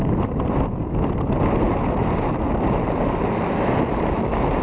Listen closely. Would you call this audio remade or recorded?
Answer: recorded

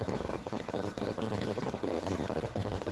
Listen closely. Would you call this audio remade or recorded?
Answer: remade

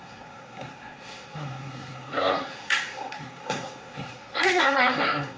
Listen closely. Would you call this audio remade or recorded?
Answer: remade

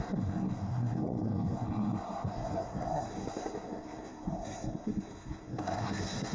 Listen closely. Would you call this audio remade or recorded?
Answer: remade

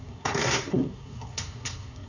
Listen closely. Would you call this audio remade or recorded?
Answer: remade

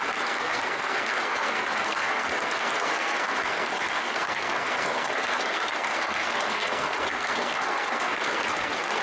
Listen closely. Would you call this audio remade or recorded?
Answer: remade